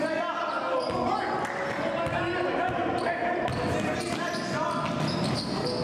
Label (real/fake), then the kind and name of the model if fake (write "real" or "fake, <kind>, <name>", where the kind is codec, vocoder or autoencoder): real